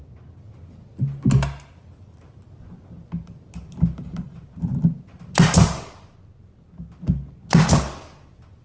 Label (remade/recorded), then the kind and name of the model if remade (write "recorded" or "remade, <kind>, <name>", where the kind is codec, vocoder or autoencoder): recorded